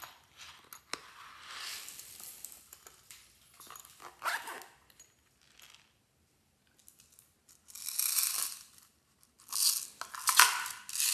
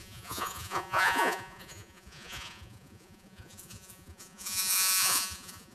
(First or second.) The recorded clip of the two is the first